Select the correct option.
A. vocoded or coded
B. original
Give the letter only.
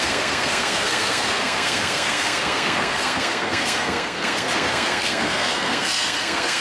A